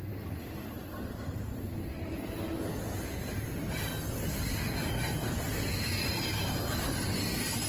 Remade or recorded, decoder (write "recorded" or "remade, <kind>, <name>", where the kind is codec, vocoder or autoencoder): recorded